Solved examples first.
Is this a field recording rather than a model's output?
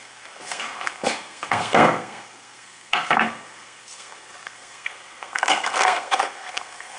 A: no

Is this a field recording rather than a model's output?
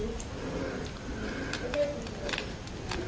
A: yes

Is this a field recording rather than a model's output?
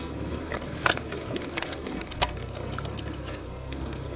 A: no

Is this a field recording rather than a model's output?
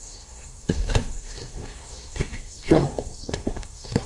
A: no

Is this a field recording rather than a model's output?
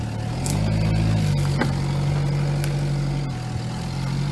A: yes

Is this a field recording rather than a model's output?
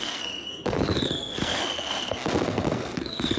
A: no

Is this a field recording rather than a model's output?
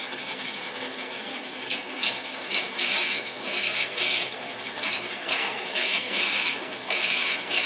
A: no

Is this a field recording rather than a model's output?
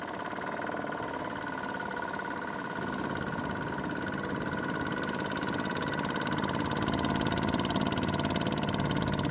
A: yes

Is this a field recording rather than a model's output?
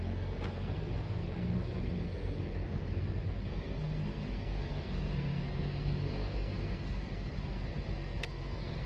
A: no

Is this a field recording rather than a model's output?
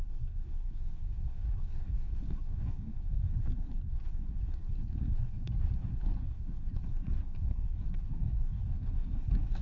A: no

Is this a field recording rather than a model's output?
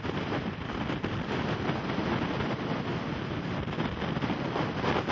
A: yes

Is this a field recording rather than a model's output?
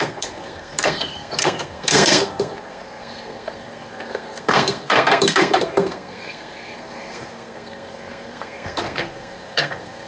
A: no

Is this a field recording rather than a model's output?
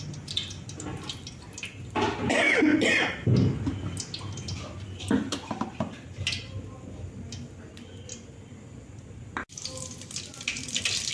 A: yes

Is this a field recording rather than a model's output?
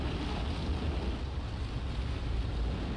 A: yes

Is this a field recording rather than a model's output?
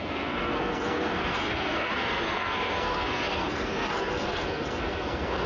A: no